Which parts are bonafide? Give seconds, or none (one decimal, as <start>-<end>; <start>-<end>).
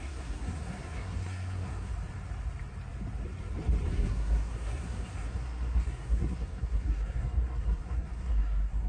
1.9-3.9